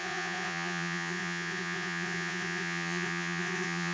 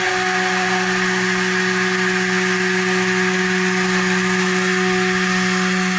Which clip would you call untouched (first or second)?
second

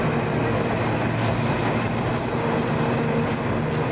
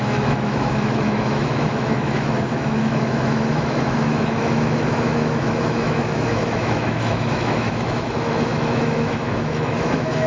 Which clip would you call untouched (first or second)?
first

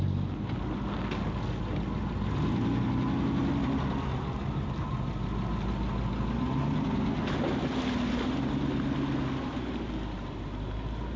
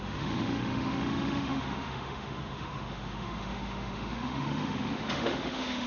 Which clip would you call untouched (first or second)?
first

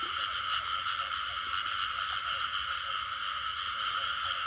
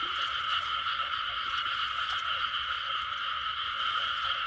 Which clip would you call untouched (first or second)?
first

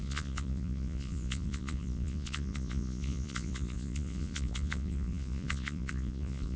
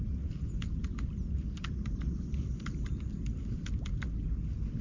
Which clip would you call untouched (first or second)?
second